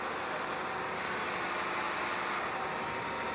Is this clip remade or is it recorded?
recorded